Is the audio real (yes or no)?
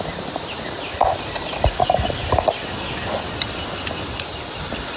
yes